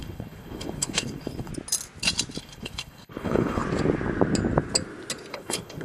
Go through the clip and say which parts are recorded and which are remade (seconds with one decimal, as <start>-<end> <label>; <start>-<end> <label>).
0.0-1.5 remade; 1.5-2.4 recorded; 2.4-3.6 remade; 3.6-5.3 recorded; 5.3-5.8 remade